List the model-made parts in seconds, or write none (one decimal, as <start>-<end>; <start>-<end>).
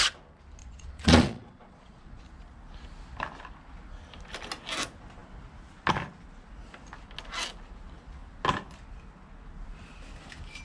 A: 0.6-2.2